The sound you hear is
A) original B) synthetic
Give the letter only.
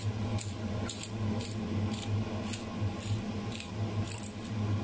A